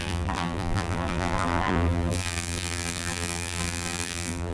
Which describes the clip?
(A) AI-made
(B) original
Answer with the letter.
A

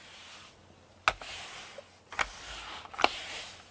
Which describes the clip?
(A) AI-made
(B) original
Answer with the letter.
B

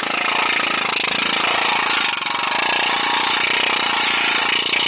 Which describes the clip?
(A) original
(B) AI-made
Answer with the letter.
A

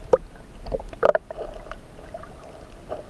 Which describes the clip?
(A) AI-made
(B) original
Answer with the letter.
A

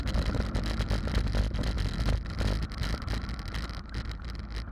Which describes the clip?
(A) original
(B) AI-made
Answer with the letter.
A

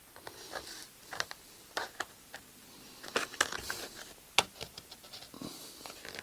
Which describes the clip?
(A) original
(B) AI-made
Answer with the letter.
A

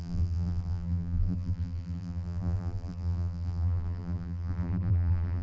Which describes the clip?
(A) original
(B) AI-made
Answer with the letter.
B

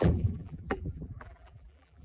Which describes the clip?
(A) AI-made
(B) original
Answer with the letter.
A